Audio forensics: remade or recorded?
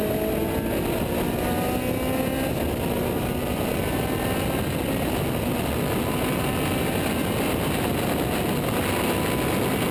recorded